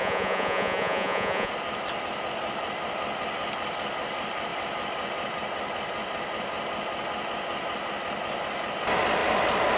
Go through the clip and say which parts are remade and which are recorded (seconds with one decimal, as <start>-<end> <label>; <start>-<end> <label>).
0.0-1.5 remade; 1.5-9.8 recorded